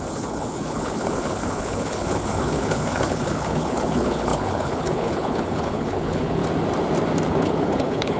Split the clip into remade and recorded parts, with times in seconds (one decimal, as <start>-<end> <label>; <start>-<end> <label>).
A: 0.0-6.4 remade; 6.4-7.3 recorded; 7.3-8.2 remade